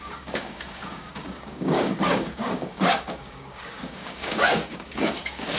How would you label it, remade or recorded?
remade